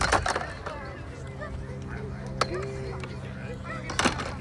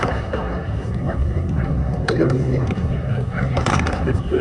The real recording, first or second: first